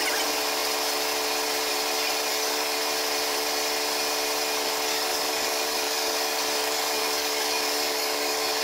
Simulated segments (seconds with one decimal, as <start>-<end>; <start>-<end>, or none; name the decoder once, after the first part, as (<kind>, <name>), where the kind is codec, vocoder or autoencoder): 2.3-2.8 (codec, DAC); 4.9-8.6